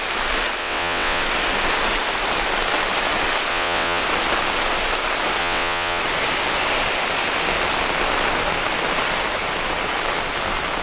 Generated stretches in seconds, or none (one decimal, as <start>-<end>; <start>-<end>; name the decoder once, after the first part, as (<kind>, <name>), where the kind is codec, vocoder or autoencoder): 0.6-1.2 (vocoder, WaveNeXt); 3.5-4.0; 5.4-6.0

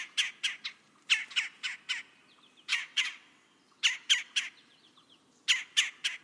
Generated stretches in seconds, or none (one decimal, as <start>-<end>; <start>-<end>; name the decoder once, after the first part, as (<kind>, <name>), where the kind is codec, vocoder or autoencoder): 2.7-3.8 (vocoder, WaveNeXt)

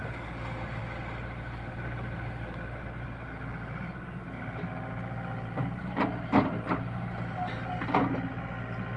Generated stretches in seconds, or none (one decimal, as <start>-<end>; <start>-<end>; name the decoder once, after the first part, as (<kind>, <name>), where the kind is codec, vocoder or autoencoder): none

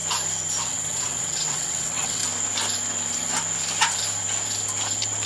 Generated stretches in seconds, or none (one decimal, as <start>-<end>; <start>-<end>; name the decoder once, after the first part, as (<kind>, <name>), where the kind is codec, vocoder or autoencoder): 0.6-2.2 (vocoder, WaveNeXt)

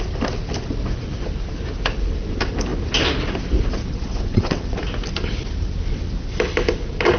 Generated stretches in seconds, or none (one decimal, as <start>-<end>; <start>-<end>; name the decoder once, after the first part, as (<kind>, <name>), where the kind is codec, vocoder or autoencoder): 3.8-4.8 (vocoder, WaveNeXt)

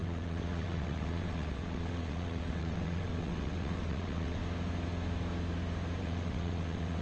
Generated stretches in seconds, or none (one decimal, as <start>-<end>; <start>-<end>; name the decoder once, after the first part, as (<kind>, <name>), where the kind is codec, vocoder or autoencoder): 0.0-4.4 (vocoder, WaveNeXt); 6.0-7.0

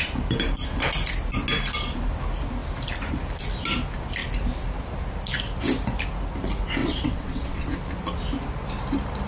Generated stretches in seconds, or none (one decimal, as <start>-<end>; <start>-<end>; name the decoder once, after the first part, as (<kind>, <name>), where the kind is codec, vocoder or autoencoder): 6.8-7.7 (vocoder, WaveNeXt)

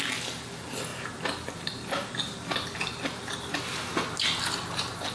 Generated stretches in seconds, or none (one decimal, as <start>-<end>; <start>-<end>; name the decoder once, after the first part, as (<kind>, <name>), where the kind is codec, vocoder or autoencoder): none